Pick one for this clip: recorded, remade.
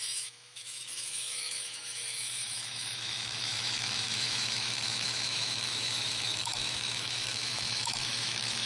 remade